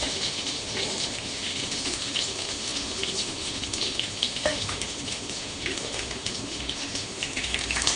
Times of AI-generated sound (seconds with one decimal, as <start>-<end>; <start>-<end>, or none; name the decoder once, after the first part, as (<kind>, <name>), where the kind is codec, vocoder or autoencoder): 0.0-8.0 (autoencoder, DAC-VAE)